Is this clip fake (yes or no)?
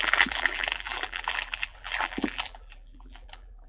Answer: yes